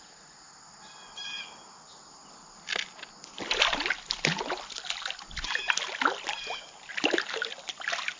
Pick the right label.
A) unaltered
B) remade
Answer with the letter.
A